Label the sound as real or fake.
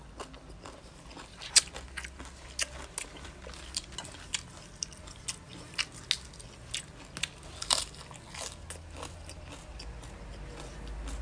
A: real